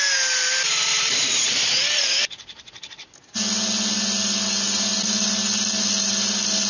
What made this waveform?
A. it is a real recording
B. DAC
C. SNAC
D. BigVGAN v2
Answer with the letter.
A